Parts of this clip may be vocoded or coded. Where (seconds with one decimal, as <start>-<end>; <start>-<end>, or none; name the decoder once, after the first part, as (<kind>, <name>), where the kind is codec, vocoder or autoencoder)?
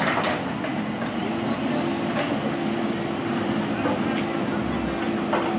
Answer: none